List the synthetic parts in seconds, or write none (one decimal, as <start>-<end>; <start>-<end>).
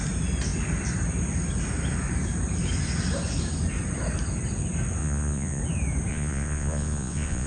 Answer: 5.0-5.6; 6.1-7.5